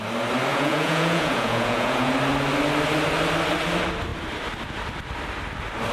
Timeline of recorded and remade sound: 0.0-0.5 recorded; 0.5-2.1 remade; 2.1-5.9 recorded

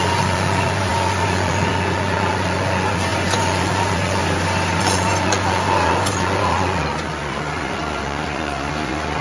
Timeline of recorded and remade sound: 0.0-4.2 remade; 4.2-4.8 recorded; 4.8-9.2 remade

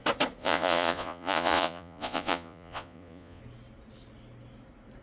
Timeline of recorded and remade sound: 0.0-0.4 recorded; 0.4-3.4 remade; 3.4-5.0 recorded

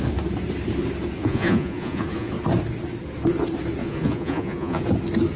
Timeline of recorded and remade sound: 0.0-1.2 recorded; 1.2-2.3 remade; 2.3-3.8 recorded; 3.8-4.8 remade; 4.8-5.4 recorded

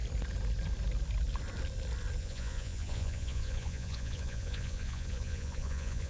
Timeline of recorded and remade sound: 0.0-2.2 recorded; 2.2-6.1 remade

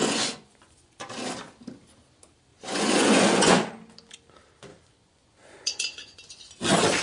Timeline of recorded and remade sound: 0.0-1.1 remade; 1.1-2.5 recorded; 2.5-3.7 remade; 3.7-4.7 recorded; 4.7-6.5 remade; 6.5-7.0 recorded

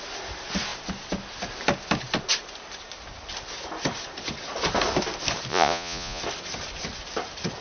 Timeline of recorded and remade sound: 0.0-5.5 recorded; 5.5-6.2 remade; 6.2-7.6 recorded

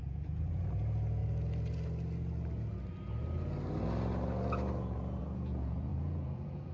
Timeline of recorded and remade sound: 0.0-1.2 remade; 1.2-5.2 recorded; 5.2-6.7 remade